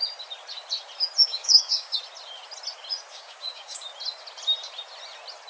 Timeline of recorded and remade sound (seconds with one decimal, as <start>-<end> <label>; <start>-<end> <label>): 0.0-1.3 recorded; 1.3-2.0 remade; 2.0-3.1 recorded; 3.1-3.8 remade; 3.8-5.5 recorded